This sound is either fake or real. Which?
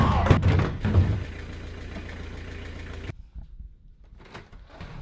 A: real